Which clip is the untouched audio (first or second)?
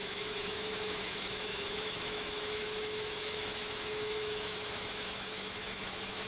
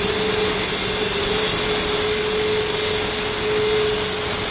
second